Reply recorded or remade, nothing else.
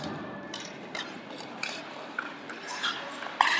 remade